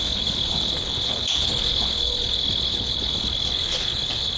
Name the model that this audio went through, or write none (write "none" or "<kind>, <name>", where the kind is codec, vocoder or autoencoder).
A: codec, HILCodec